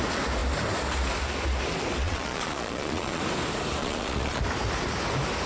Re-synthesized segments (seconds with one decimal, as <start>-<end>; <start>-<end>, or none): 2.0-3.2; 3.8-4.4